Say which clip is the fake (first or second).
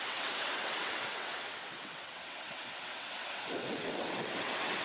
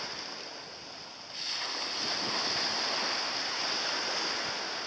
first